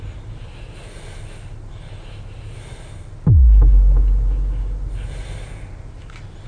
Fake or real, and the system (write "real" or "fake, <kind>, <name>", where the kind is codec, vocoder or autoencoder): real